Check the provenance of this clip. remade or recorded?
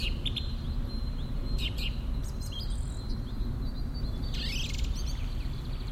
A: recorded